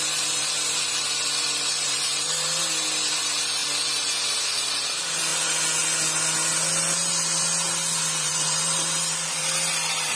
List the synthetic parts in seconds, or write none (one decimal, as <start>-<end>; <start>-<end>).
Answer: 0.0-3.6; 4.3-5.3; 8.0-10.2